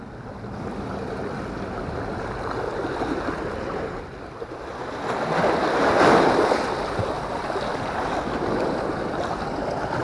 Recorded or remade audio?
recorded